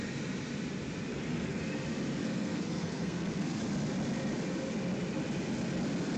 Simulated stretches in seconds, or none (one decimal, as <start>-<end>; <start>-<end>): 1.1-1.6; 2.2-3.6